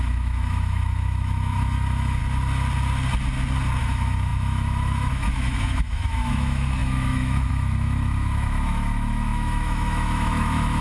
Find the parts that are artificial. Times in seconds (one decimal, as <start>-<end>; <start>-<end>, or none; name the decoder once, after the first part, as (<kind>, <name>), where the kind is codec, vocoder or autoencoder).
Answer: 0.0-2.2 (autoencoder, DAC-VAE); 3.8-10.8